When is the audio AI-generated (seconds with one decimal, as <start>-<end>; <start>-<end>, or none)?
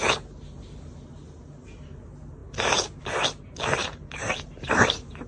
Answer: 3.8-5.3